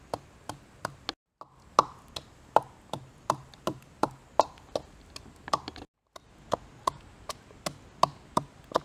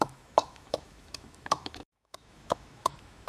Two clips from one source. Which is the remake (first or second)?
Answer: second